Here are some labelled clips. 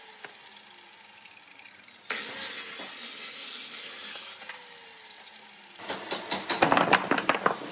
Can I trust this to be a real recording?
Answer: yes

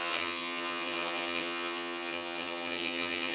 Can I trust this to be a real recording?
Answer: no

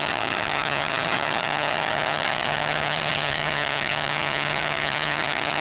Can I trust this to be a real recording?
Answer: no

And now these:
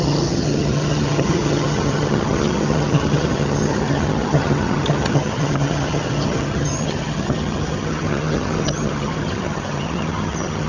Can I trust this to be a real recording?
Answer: no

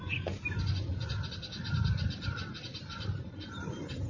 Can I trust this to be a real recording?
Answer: yes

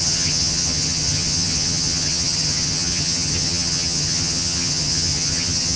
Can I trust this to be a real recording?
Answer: no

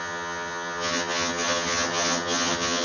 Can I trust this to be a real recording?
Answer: no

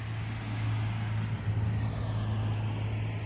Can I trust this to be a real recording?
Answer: yes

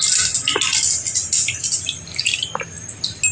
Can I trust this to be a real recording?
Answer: yes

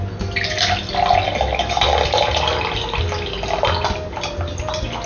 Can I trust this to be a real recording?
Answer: yes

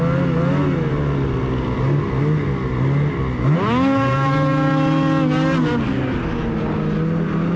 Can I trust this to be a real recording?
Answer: yes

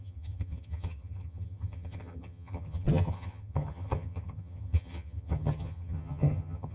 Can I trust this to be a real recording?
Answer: no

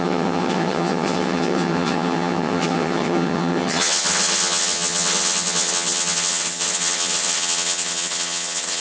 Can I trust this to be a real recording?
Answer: no